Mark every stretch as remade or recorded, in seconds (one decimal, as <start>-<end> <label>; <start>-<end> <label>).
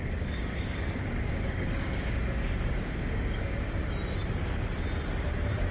0.0-3.8 remade; 3.8-5.7 recorded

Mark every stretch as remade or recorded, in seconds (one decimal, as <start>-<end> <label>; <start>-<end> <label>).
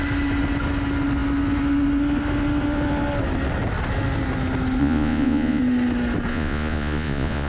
0.0-4.8 recorded; 4.8-5.6 remade; 5.6-6.3 recorded; 6.3-7.5 remade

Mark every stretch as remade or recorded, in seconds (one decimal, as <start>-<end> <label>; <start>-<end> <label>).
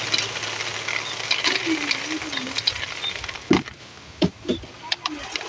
0.0-5.5 recorded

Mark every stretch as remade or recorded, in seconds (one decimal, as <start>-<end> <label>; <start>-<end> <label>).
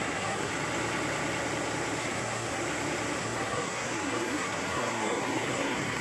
0.0-0.5 remade; 0.5-2.0 recorded; 2.0-2.6 remade; 2.6-3.2 recorded; 3.2-6.0 remade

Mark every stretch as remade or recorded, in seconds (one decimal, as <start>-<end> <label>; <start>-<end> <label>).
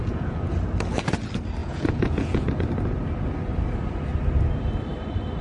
0.0-0.6 remade; 0.6-1.6 recorded; 1.6-2.7 remade; 2.7-5.4 recorded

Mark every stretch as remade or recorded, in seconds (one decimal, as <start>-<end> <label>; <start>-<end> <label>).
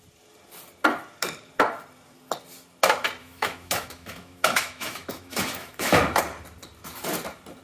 0.0-3.2 recorded; 3.2-6.2 remade; 6.2-7.6 recorded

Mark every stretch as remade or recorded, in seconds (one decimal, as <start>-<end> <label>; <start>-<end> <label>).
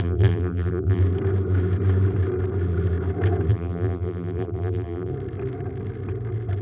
0.0-1.0 remade; 1.0-3.5 recorded; 3.5-5.1 remade; 5.1-6.6 recorded